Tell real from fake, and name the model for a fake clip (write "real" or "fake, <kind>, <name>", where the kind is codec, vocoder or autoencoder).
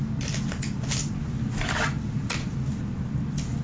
real